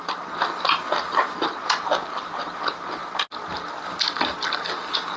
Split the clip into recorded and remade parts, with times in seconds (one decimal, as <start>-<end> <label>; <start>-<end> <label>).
0.0-5.2 recorded